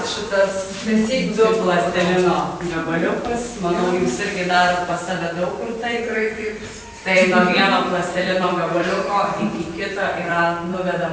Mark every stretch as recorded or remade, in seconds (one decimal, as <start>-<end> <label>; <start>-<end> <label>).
0.0-1.0 remade; 1.0-2.6 recorded; 2.6-11.1 remade